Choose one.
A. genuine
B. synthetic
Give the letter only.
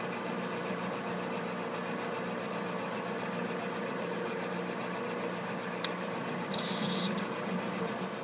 A